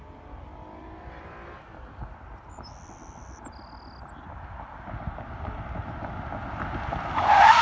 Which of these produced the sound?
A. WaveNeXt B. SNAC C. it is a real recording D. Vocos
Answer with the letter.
C